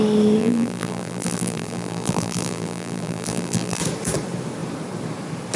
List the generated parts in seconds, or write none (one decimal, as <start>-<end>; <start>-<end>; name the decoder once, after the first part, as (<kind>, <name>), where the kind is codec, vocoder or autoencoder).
0.4-3.8 (vocoder, BigVGAN v2)